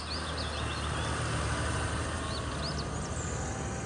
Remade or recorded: recorded